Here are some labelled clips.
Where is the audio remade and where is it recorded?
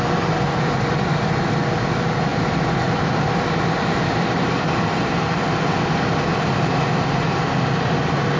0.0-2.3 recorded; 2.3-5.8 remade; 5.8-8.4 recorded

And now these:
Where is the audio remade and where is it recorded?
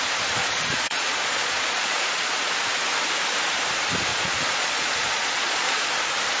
0.0-0.4 recorded; 0.4-2.5 remade; 2.5-4.1 recorded; 4.1-5.9 remade; 5.9-6.4 recorded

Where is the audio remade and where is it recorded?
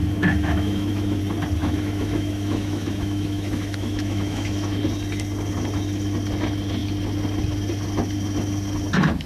0.0-1.2 remade; 1.2-1.6 recorded; 1.6-4.8 remade; 4.8-9.3 recorded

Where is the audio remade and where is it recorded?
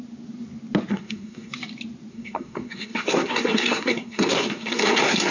0.0-0.9 recorded; 0.9-1.5 remade; 1.5-2.1 recorded; 2.1-5.3 remade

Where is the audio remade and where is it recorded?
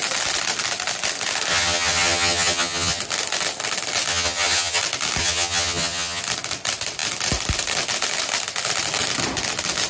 0.0-1.5 recorded; 1.5-3.0 remade; 3.0-4.1 recorded; 4.1-4.8 remade; 4.8-5.2 recorded; 5.2-6.2 remade; 6.2-9.9 recorded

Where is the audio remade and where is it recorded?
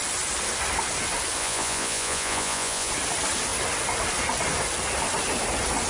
0.0-1.4 recorded; 1.4-2.9 remade; 2.9-5.9 recorded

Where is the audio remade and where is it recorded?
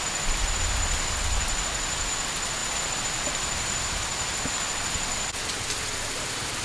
0.0-6.6 recorded